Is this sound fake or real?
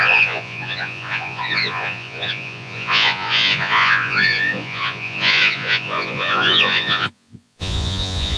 fake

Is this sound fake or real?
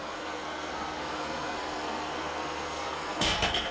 fake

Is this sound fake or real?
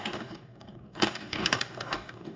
fake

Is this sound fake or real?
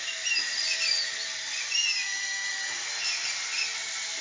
real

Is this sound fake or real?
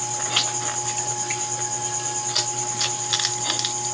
real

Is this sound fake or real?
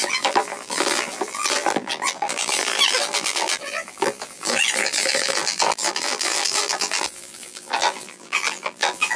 fake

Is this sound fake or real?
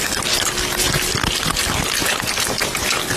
real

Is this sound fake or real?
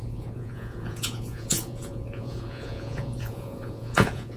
fake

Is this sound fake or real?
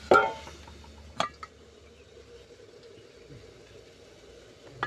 real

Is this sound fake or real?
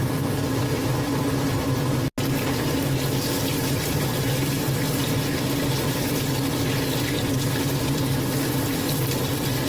real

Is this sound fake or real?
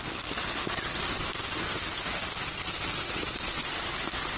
real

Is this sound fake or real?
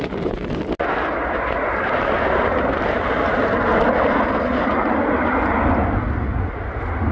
real